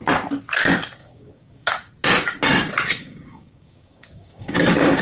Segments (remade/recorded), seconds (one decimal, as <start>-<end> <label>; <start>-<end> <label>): 0.0-1.0 recorded; 1.0-1.7 remade; 1.7-3.0 recorded; 3.0-5.0 remade